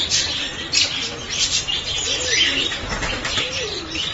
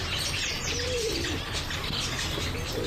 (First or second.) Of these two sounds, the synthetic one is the second